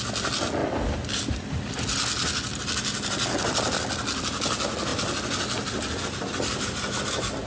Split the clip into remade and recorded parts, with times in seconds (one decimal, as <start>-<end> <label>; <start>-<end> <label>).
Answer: 0.0-7.5 recorded